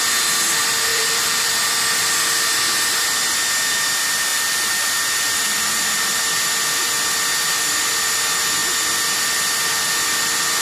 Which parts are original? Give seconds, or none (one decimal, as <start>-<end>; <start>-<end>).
0.0-0.9; 1.6-4.3; 5.8-10.6